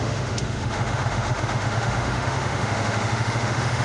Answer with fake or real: fake